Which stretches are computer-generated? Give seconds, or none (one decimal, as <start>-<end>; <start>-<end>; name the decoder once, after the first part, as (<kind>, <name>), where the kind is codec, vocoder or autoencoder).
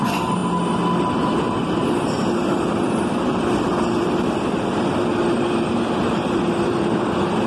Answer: 0.0-0.4 (vocoder, BigVGAN v2); 1.0-7.5